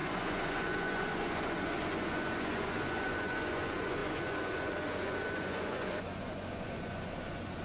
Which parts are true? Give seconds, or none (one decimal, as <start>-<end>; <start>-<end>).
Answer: none